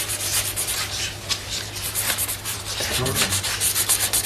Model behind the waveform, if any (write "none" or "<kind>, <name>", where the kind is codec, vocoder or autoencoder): vocoder, BigVGAN v2